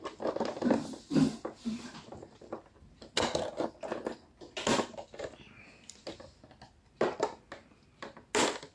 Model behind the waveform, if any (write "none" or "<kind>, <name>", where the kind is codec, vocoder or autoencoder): none